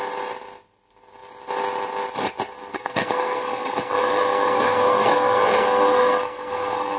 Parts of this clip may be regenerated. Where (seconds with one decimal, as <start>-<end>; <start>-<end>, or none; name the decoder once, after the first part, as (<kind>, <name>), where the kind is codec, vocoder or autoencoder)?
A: 2.7-7.0 (codec, SNAC)